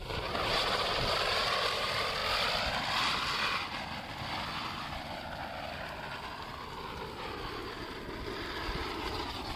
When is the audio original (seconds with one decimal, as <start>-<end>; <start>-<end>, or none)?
0.0-9.6